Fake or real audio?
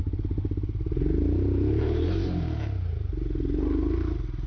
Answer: real